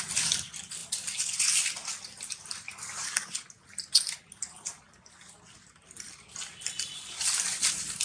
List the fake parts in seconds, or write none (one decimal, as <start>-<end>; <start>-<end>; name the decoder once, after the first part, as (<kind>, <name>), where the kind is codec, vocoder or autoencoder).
none